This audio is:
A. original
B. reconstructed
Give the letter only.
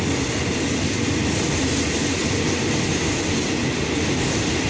A